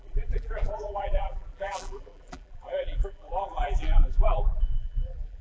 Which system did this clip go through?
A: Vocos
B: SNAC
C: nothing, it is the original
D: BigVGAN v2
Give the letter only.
D